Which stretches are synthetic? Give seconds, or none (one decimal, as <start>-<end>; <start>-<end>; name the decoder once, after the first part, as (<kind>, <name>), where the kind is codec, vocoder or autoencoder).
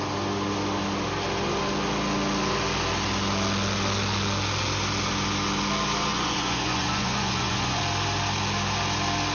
6.1-7.8 (vocoder, Vocos)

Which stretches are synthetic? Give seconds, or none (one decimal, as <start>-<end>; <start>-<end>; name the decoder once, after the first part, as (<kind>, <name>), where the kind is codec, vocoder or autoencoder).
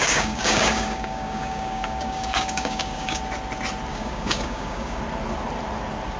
0.0-3.2 (codec, DAC); 3.9-5.0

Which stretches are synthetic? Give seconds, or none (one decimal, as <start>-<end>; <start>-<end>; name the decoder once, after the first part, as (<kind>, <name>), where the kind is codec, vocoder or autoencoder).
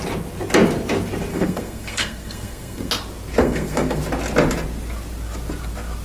1.3-2.9 (codec, SNAC); 3.4-4.0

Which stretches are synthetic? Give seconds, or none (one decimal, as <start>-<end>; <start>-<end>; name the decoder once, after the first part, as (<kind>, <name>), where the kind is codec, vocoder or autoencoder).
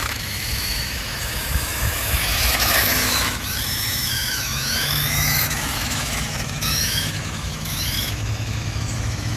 0.0-9.4 (autoencoder, DAC-VAE)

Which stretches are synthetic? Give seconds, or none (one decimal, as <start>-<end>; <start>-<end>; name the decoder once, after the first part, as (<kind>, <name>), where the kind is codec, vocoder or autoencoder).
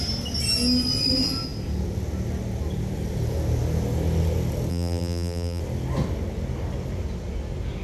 4.7-5.6 (vocoder, BigVGAN v2)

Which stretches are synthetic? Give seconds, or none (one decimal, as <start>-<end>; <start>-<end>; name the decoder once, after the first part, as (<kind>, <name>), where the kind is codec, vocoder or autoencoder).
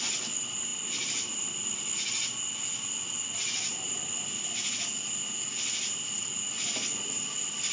none